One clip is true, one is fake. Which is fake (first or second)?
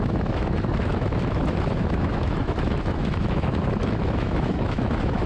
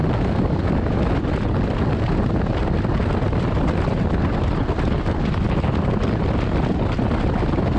first